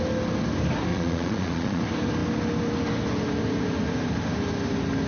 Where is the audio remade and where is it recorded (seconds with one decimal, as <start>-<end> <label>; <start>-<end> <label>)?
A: 0.0-0.9 recorded; 0.9-1.8 remade; 1.8-5.1 recorded